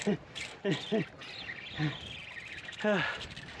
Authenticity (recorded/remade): recorded